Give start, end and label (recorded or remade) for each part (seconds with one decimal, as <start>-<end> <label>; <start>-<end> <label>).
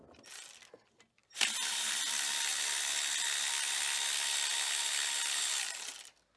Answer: 0.0-1.2 recorded; 1.2-2.0 remade; 2.0-6.4 recorded